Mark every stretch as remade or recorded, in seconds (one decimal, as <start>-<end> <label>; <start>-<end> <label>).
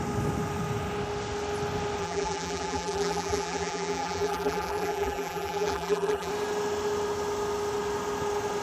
0.0-2.0 recorded; 2.0-6.3 remade; 6.3-8.6 recorded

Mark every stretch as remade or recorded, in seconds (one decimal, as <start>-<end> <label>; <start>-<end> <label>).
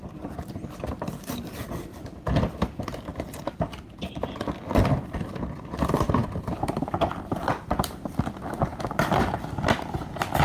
0.0-6.2 remade; 6.2-6.8 recorded; 6.8-10.4 remade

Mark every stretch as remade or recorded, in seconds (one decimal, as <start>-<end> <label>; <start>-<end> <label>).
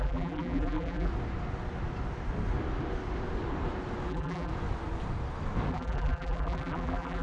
0.0-1.1 remade; 1.1-4.1 recorded; 4.1-4.5 remade; 4.5-5.7 recorded; 5.7-7.2 remade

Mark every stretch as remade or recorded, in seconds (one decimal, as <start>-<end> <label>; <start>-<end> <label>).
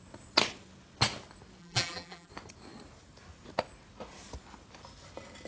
0.0-1.6 recorded; 1.6-2.3 remade; 2.3-5.5 recorded